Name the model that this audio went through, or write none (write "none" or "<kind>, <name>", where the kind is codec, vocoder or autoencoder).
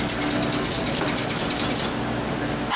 none